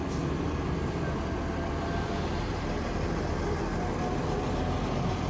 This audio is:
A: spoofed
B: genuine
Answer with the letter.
B